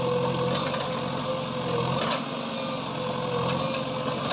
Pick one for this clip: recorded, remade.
recorded